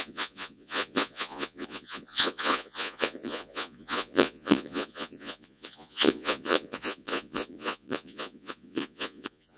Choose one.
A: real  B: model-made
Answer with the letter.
B